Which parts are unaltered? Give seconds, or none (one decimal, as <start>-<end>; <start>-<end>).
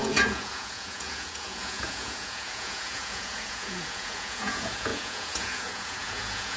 none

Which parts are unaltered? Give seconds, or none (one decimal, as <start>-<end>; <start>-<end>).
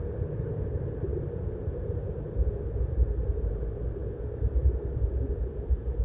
none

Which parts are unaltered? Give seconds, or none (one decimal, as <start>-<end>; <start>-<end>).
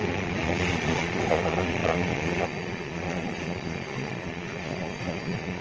none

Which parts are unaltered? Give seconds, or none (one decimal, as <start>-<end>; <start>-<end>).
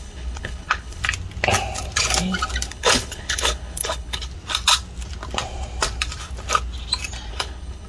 1.0-2.7; 4.3-7.3